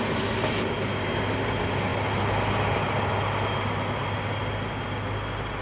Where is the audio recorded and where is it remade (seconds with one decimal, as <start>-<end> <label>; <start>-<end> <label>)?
0.0-5.6 recorded